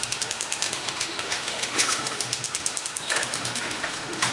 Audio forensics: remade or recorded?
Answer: remade